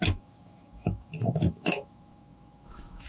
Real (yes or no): no